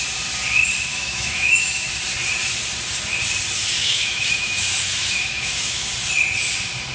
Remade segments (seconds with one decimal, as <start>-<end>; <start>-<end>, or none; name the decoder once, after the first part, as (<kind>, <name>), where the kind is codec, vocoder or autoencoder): 0.9-1.9 (autoencoder, DAC-VAE); 3.8-5.9